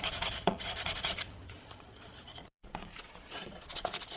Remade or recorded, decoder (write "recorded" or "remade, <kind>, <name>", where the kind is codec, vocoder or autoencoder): remade, vocoder, Vocos